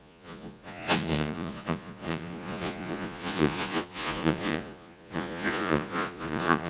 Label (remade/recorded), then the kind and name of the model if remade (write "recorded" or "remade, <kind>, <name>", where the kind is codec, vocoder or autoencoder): remade, vocoder, Vocos